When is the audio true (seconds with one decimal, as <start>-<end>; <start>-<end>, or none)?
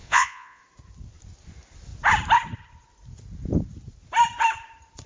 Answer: 0.6-5.1